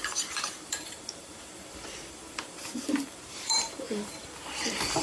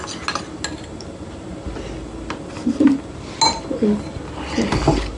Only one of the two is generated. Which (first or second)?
first